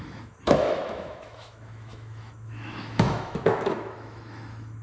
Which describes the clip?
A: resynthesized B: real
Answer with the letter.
A